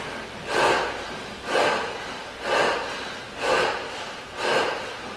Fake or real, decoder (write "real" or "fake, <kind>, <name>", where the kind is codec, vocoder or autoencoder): real